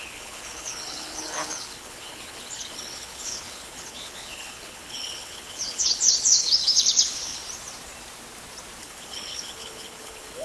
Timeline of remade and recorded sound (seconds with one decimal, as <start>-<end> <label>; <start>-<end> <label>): 0.0-7.4 remade; 7.4-8.8 recorded; 8.8-10.4 remade